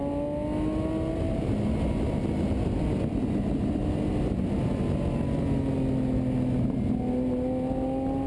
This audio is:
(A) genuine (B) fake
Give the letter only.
A